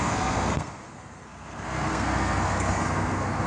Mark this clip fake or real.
fake